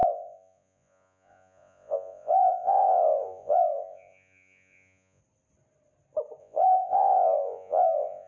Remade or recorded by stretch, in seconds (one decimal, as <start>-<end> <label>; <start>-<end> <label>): 0.0-5.2 remade; 5.2-6.4 recorded; 6.4-8.3 remade